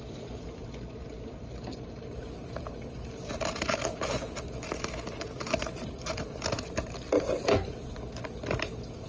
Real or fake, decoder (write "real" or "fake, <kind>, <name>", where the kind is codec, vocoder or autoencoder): real